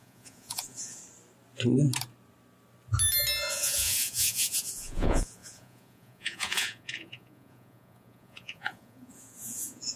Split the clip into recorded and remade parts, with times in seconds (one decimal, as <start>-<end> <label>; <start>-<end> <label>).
0.0-1.0 remade; 1.0-3.5 recorded; 3.5-10.0 remade